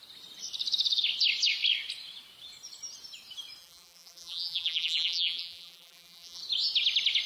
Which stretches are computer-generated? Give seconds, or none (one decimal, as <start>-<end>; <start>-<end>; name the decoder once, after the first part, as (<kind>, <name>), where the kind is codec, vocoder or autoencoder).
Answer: 3.6-6.4 (vocoder, BigVGAN v2)